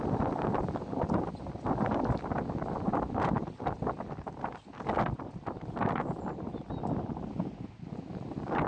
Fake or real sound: real